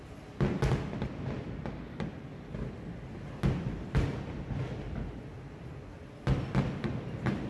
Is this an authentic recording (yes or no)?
yes